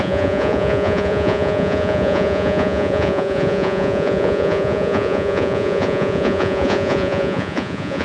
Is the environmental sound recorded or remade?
remade